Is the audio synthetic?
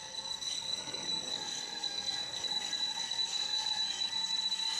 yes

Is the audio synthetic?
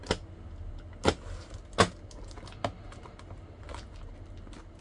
no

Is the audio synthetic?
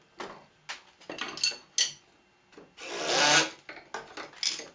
no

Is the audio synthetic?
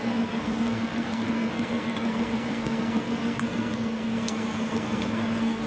yes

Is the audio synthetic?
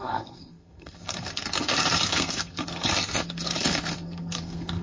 yes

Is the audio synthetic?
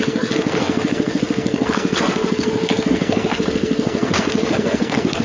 yes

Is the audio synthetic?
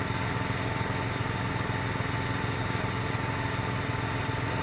no